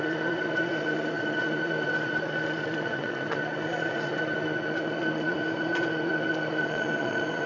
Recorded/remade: remade